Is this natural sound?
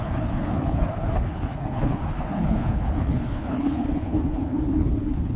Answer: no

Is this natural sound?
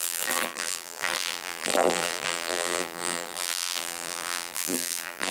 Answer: no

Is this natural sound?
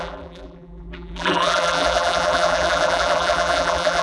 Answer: no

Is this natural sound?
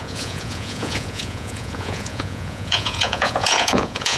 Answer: no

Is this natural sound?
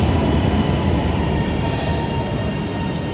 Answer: yes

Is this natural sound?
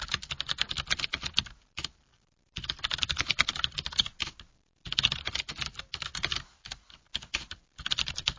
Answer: yes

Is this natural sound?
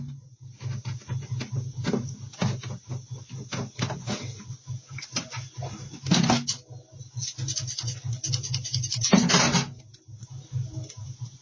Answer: yes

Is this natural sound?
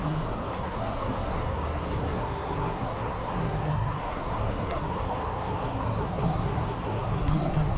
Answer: no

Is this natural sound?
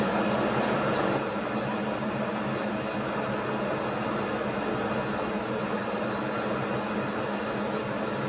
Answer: yes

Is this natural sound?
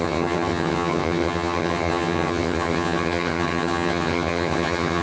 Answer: no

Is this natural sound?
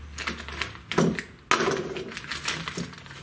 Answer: yes